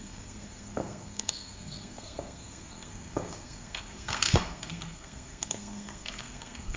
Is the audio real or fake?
fake